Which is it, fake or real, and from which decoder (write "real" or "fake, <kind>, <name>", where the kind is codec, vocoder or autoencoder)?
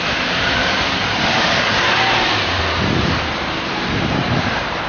fake, vocoder, BigVGAN v2